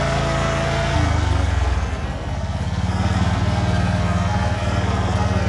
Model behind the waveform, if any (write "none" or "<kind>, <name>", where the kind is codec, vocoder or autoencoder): codec, SNAC